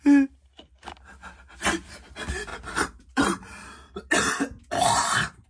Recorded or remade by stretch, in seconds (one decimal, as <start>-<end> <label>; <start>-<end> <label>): 0.0-2.5 recorded; 2.5-4.1 remade; 4.1-5.5 recorded